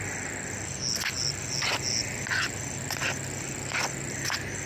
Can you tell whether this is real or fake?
real